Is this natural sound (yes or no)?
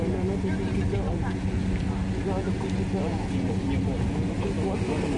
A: yes